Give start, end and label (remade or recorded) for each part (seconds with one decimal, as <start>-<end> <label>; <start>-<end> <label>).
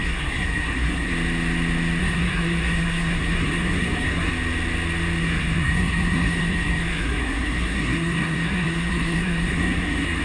0.0-1.1 remade; 1.1-2.0 recorded; 2.0-4.3 remade; 4.3-5.2 recorded; 5.2-10.2 remade